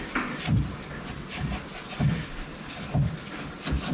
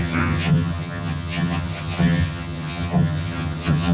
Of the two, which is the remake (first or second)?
second